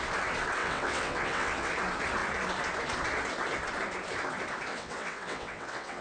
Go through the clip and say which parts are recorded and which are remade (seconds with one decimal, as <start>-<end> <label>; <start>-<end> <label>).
0.0-0.6 recorded; 0.6-1.7 remade; 1.7-4.7 recorded; 4.7-6.0 remade